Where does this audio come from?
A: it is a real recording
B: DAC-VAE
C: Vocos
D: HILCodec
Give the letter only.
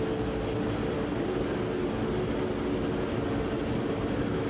A